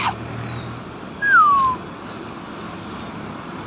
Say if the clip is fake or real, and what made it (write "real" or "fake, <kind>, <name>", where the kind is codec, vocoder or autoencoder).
real